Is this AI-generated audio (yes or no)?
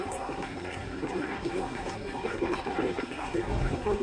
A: yes